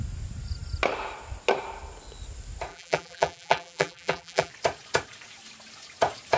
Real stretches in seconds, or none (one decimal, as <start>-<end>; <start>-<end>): 0.0-2.7; 4.5-6.4